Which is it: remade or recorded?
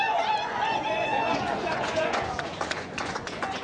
remade